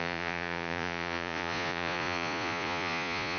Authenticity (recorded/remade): remade